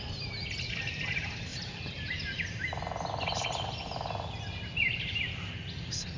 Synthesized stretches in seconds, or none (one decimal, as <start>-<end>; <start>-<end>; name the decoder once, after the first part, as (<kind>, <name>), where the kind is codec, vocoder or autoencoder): none